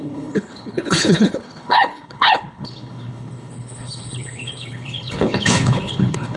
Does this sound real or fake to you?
fake